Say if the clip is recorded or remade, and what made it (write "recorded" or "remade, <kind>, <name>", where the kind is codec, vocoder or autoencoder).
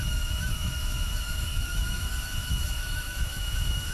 remade, autoencoder, DAC-VAE